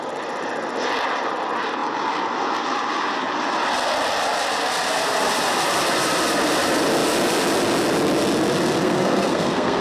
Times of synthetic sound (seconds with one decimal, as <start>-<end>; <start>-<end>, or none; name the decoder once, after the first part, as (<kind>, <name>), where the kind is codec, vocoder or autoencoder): 8.8-9.8 (codec, SNAC)